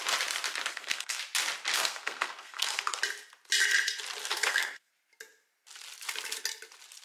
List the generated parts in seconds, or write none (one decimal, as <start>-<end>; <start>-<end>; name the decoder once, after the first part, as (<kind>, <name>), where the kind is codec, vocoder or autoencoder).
0.7-1.2 (codec, SNAC); 1.7-2.8; 4.2-4.9